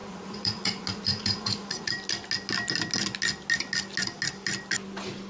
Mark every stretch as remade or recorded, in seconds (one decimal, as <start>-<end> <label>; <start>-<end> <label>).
0.0-1.9 remade; 1.9-5.3 recorded